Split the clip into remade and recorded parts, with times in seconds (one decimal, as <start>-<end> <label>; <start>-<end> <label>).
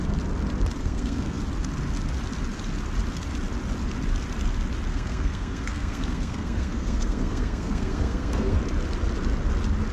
0.0-0.8 recorded; 0.8-1.4 remade; 1.4-4.9 recorded; 4.9-8.6 remade; 8.6-9.9 recorded